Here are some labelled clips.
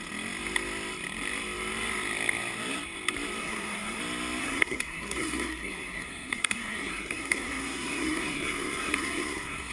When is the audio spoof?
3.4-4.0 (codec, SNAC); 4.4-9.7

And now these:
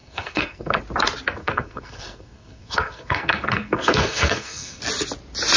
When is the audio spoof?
0.0-0.8 (codec, SNAC); 1.4-4.8

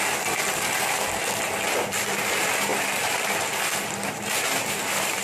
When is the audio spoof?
none

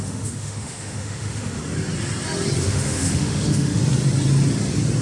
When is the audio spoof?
0.0-1.6 (autoencoder, DAC-VAE); 2.6-3.8

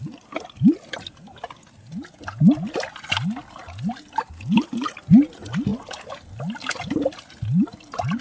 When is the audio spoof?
none

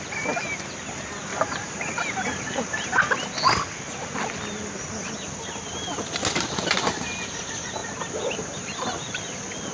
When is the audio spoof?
1.3-3.0 (vocoder, BigVGAN v2); 7.8-9.1

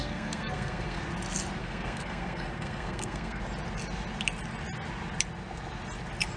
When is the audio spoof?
0.0-1.0 (codec, SNAC); 1.6-3.4